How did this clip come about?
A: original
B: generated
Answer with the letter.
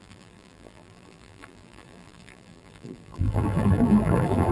B